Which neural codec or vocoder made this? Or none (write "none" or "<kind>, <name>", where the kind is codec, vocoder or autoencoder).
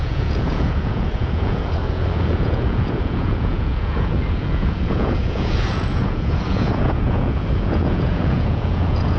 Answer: vocoder, Vocos